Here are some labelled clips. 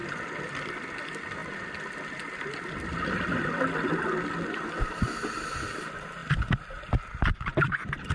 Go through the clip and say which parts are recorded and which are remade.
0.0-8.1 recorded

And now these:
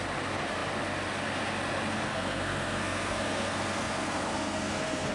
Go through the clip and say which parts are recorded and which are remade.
0.0-2.1 recorded; 2.1-5.1 remade

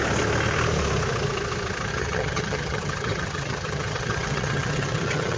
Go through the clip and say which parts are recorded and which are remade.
0.0-1.9 recorded; 1.9-5.4 remade

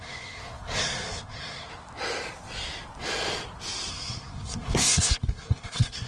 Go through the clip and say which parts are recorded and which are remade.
0.0-1.7 remade; 1.7-3.9 recorded; 3.9-6.1 remade

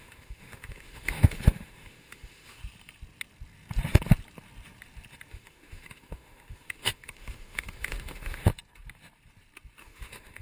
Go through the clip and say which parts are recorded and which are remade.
0.0-2.6 remade; 2.6-5.3 recorded; 5.3-8.5 remade; 8.5-9.8 recorded; 9.8-10.4 remade

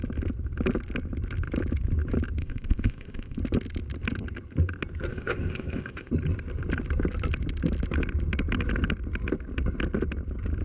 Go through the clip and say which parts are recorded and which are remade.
0.0-2.4 recorded; 2.4-3.4 remade; 3.4-5.1 recorded; 5.1-6.1 remade; 6.1-10.6 recorded

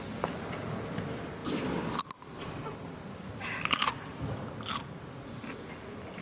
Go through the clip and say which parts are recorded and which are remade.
0.0-6.2 recorded